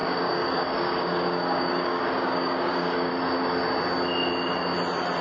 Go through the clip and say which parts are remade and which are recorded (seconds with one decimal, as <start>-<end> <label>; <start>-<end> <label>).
0.0-3.1 remade; 3.1-5.2 recorded